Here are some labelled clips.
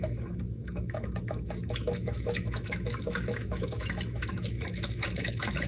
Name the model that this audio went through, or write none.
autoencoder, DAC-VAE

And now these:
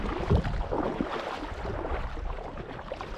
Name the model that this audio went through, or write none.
none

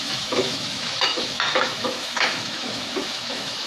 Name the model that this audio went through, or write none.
autoencoder, DAC-VAE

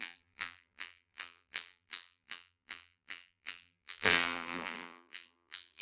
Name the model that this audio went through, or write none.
vocoder, BigVGAN v2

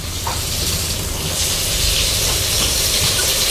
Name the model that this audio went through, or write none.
vocoder, BigVGAN v2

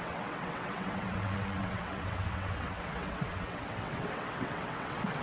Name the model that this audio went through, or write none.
vocoder, WaveNeXt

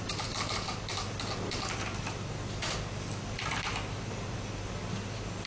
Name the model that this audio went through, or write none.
none